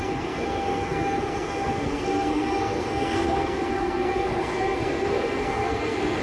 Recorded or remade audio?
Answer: remade